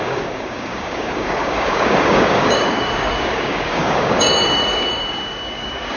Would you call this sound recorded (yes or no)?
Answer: no